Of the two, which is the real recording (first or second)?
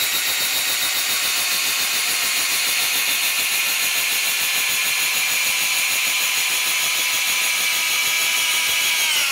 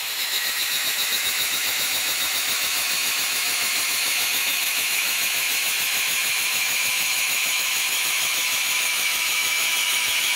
first